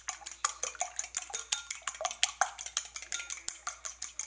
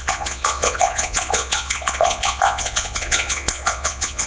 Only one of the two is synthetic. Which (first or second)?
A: second